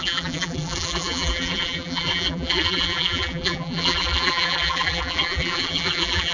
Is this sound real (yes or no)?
no